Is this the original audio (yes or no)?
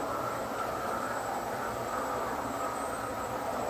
no